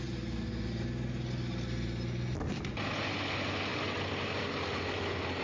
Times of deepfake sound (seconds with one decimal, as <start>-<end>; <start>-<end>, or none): none

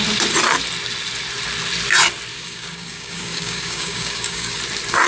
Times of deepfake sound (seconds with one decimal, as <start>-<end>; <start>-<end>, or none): 2.3-4.6

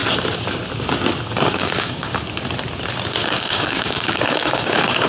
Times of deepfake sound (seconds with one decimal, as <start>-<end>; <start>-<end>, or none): 1.6-2.2; 3.2-5.1

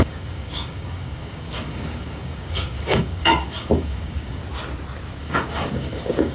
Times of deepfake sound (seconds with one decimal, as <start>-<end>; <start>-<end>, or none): 0.0-4.4; 5.2-6.3